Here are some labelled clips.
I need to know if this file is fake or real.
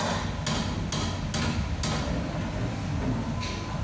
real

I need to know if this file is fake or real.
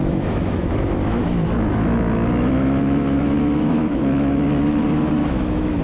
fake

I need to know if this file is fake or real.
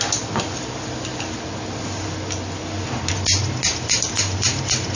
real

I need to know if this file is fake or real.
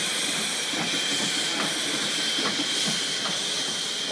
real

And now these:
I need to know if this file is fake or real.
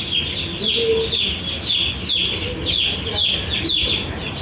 real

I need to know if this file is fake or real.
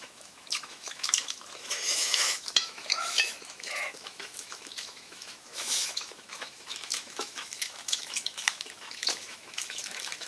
fake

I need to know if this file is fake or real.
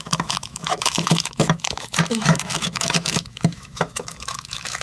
fake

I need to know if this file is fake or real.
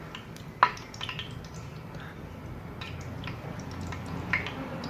real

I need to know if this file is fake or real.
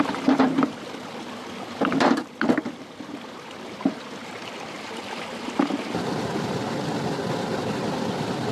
real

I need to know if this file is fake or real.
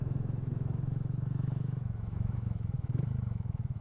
fake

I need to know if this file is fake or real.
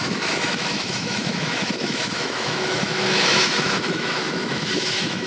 fake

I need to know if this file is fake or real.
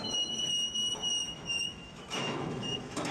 fake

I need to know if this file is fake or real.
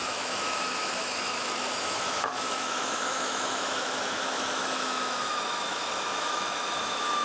fake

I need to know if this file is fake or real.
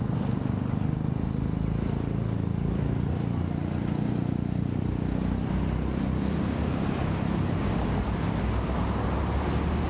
real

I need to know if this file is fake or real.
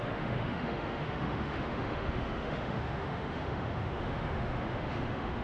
fake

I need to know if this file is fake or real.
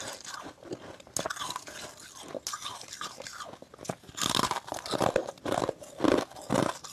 real